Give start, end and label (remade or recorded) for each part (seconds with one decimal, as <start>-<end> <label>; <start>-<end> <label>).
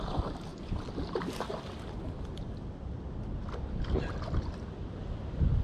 0.0-5.6 recorded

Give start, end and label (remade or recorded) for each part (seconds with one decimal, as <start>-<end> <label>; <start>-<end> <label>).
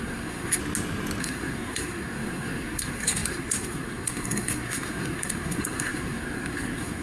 0.0-0.6 remade; 0.6-1.2 recorded; 1.2-7.0 remade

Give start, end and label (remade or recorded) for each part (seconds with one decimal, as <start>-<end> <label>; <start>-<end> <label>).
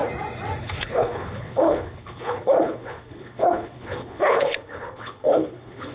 0.0-0.6 recorded; 0.6-5.9 remade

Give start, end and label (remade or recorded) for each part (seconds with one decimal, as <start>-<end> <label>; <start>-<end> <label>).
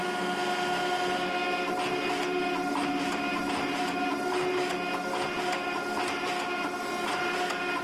0.0-7.8 recorded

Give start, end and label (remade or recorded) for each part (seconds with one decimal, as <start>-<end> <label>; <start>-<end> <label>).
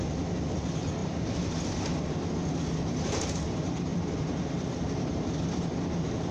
0.0-3.9 recorded; 3.9-5.3 remade; 5.3-6.3 recorded